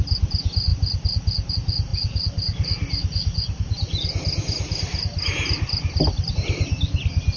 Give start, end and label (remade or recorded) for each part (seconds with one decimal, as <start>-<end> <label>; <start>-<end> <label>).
0.0-7.4 recorded